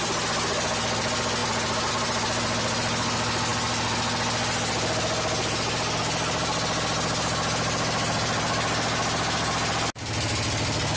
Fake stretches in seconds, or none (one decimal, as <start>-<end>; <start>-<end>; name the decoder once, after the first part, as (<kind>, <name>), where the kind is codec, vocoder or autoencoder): none

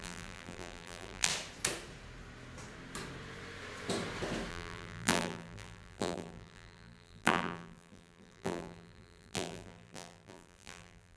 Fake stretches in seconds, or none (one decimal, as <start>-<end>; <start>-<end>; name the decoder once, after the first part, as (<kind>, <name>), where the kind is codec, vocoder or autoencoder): 0.0-1.3 (vocoder, BigVGAN v2); 4.5-11.2